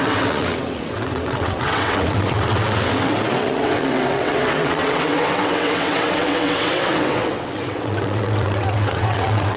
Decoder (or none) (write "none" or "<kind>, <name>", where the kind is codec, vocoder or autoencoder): vocoder, WaveNeXt